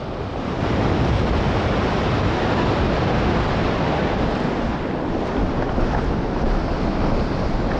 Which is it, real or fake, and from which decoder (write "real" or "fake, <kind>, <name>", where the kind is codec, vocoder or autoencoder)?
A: real